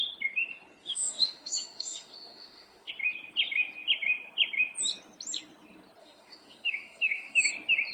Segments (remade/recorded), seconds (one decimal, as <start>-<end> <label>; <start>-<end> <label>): 0.0-0.8 recorded; 0.8-2.9 remade; 2.9-6.0 recorded; 6.0-7.5 remade; 7.5-7.9 recorded